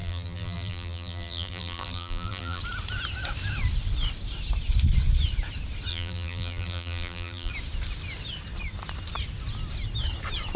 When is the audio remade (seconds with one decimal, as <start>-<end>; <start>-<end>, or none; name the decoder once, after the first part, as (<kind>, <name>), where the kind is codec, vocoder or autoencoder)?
0.0-2.6 (vocoder, BigVGAN v2); 5.9-7.5